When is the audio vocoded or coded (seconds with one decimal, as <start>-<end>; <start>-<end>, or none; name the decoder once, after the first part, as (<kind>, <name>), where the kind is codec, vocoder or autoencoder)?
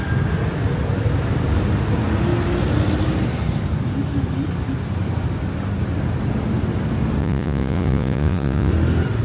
7.2-8.7 (vocoder, Vocos)